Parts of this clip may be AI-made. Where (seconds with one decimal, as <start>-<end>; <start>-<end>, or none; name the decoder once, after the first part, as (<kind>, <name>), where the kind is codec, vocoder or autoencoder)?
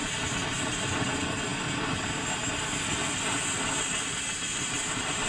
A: none